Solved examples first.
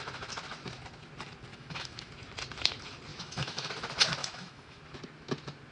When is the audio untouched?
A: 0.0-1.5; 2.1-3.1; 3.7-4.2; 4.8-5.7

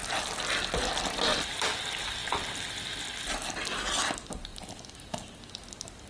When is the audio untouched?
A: 0.0-6.1

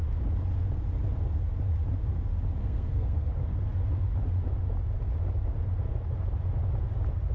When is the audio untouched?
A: 0.0-2.6; 3.3-7.3

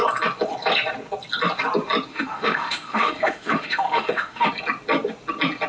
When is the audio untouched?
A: 0.0-2.1; 4.5-5.7